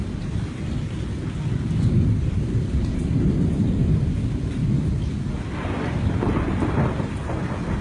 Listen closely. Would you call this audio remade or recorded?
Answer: remade